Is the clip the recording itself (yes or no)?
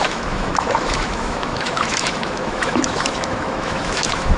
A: no